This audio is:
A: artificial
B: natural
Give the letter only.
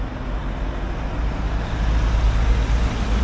B